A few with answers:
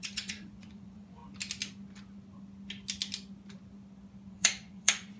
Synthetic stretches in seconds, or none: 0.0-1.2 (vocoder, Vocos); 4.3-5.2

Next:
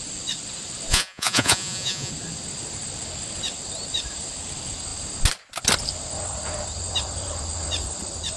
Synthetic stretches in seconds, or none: 0.9-2.1 (vocoder, Vocos)

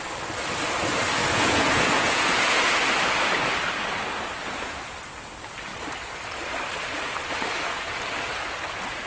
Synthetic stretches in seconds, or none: 1.2-2.7 (vocoder, Vocos)

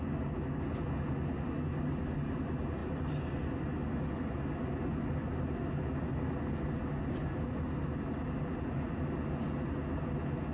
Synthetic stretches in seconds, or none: none

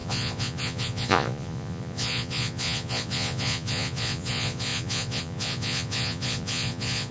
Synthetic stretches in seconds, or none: 0.0-7.1 (vocoder, Vocos)

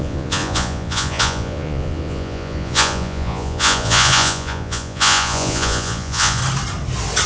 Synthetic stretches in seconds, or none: 0.0-6.4 (vocoder, Vocos)